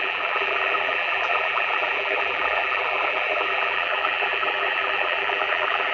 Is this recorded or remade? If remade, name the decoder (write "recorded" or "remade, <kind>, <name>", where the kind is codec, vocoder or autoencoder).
remade, vocoder, BigVGAN v2